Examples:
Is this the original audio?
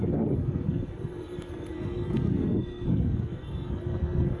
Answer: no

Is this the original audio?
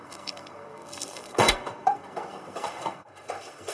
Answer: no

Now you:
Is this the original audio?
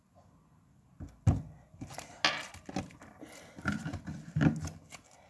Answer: yes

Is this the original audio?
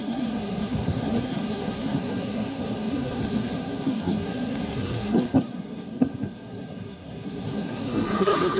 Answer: no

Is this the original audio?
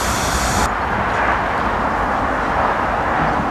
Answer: yes